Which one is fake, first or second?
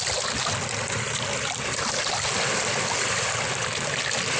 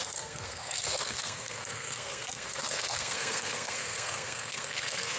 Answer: second